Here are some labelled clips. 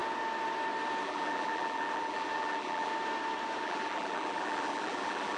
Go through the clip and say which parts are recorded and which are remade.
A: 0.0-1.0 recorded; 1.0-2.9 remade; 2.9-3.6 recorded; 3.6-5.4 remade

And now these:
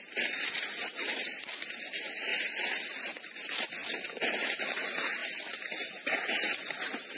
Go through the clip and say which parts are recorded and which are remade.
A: 0.0-7.2 remade

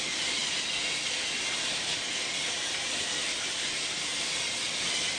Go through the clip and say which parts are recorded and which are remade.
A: 0.0-0.4 remade; 0.4-0.9 recorded; 0.9-5.2 remade

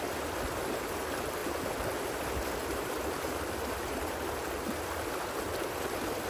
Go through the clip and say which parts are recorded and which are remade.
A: 0.0-1.4 remade; 1.4-2.0 recorded; 2.0-6.3 remade

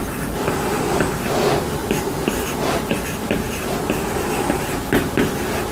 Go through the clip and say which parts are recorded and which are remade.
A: 0.0-1.8 recorded; 1.8-4.3 remade; 4.3-5.7 recorded

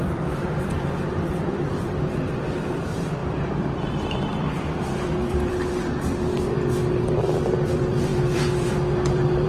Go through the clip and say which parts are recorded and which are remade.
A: 0.0-9.5 remade